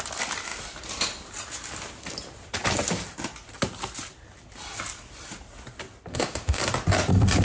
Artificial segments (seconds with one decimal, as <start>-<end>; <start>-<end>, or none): 6.1-6.6